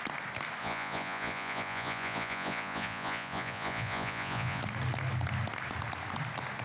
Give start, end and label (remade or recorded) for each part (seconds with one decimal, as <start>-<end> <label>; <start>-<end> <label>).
0.0-0.6 recorded; 0.6-4.6 remade; 4.6-6.6 recorded